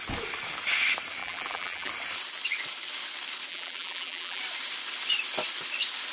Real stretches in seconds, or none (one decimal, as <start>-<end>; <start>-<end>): 0.0-1.2; 1.9-3.5; 4.4-6.1